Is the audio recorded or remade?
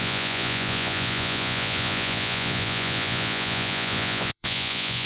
remade